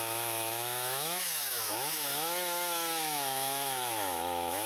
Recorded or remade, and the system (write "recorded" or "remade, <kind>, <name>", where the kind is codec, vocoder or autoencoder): remade, autoencoder, DAC-VAE